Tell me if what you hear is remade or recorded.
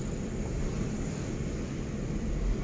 recorded